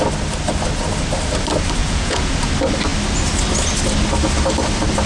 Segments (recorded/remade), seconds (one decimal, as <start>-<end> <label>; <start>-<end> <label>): 0.0-1.8 recorded; 1.8-2.5 remade; 2.5-5.1 recorded